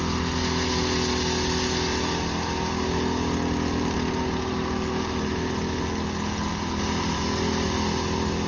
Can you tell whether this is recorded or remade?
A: recorded